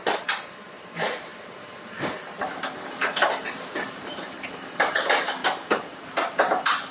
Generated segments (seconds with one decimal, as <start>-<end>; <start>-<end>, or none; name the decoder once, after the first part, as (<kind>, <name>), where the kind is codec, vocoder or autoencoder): 0.0-6.9 (vocoder, BigVGAN v2)